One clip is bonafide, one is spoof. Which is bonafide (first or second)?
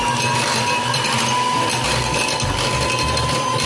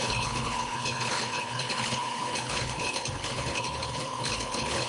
first